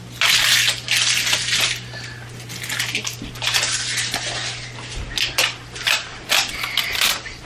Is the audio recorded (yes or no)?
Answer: yes